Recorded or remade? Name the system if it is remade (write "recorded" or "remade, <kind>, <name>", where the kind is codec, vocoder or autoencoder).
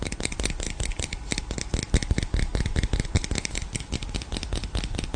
recorded